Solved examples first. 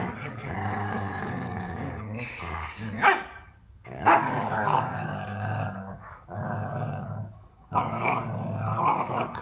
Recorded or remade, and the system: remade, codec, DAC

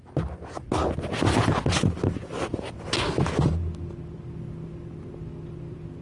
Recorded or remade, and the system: recorded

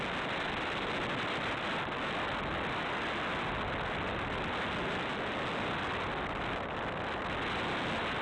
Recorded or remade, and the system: recorded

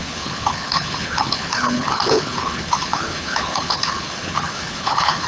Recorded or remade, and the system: remade, codec, HILCodec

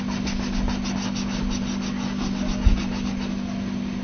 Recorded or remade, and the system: recorded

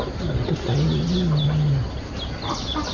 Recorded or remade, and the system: recorded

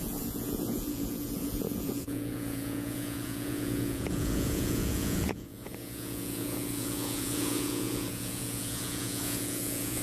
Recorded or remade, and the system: remade, vocoder, Vocos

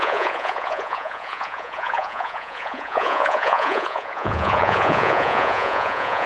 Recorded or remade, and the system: remade, vocoder, Vocos